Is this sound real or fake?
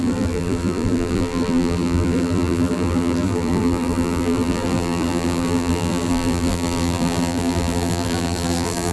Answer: fake